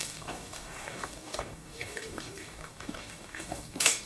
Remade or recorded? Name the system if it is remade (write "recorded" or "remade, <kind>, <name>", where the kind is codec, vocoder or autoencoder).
remade, codec, DAC